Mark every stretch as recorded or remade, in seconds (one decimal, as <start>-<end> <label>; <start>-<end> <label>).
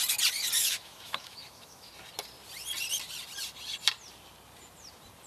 0.0-0.6 recorded; 0.6-1.9 remade; 1.9-5.3 recorded